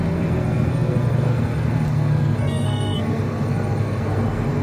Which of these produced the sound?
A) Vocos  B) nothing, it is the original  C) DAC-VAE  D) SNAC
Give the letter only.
D